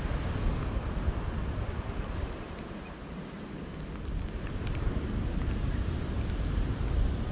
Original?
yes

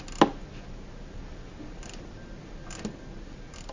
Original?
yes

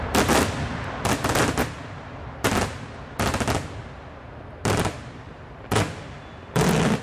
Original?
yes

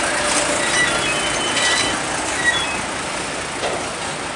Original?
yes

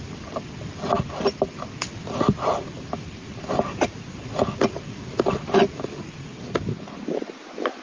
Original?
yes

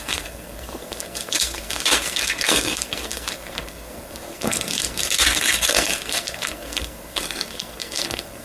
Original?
no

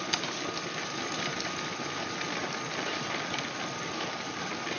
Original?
yes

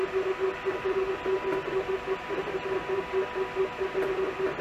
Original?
yes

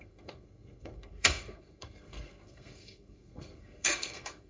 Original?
no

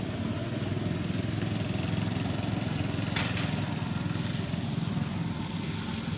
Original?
yes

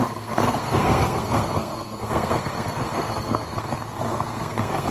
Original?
no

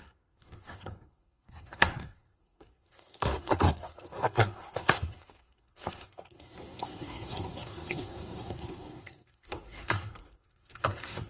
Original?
no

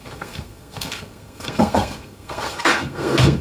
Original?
no